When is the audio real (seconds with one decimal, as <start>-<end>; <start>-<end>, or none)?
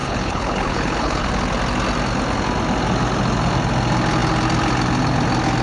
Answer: 1.3-5.6